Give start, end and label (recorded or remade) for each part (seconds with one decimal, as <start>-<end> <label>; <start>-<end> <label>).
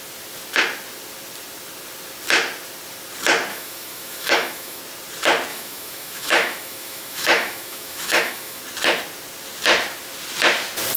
0.0-3.5 recorded; 3.5-4.8 remade; 4.8-5.5 recorded; 5.5-8.6 remade; 8.6-11.0 recorded